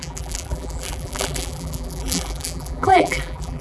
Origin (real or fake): fake